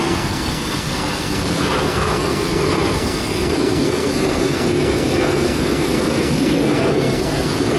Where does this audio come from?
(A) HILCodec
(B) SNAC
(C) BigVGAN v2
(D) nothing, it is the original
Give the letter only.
B